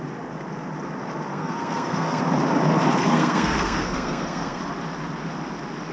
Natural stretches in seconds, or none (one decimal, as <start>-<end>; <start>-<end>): 0.0-1.3; 2.2-3.0; 4.6-5.9